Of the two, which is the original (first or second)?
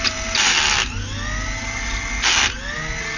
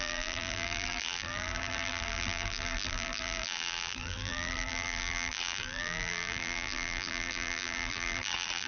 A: first